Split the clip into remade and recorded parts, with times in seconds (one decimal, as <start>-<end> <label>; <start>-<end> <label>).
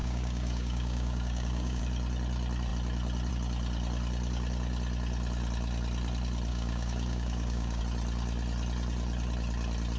0.0-1.8 remade; 1.8-6.5 recorded; 6.5-7.8 remade; 7.8-10.0 recorded